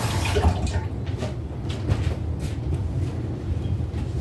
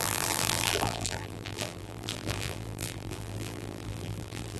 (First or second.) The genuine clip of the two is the first